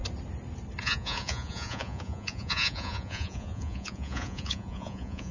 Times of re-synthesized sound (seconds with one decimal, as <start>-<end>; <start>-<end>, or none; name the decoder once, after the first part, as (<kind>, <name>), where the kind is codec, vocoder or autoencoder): 0.8-5.3 (vocoder, Vocos)